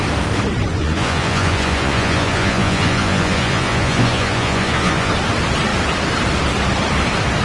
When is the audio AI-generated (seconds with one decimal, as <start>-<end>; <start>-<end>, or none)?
0.7-5.1